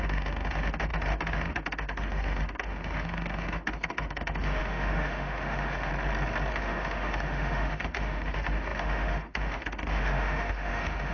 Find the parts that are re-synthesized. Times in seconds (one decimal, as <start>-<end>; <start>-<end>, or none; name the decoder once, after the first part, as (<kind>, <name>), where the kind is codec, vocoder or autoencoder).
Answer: 0.0-5.9 (autoencoder, DAC-VAE); 6.5-11.1